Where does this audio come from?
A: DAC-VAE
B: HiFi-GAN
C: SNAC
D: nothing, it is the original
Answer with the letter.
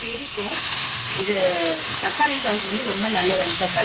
A